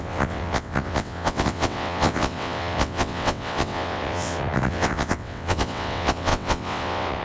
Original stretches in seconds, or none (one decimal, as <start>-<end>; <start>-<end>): none

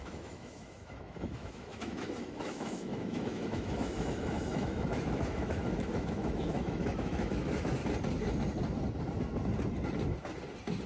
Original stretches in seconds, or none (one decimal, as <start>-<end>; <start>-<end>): 7.8-10.9

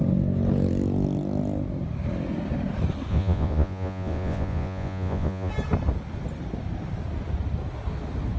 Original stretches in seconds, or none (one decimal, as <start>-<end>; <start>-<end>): 0.0-3.1; 5.5-8.4

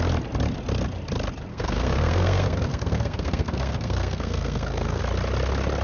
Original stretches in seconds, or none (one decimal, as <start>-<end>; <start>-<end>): 0.0-1.5; 5.0-5.8

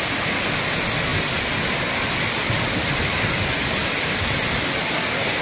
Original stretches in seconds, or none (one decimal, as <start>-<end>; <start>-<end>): 0.0-5.4

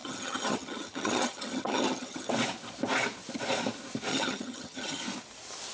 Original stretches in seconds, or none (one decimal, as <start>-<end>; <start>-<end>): 2.3-4.1; 5.0-5.7